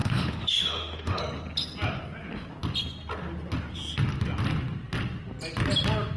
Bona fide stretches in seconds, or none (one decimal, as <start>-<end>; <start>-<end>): 1.2-6.2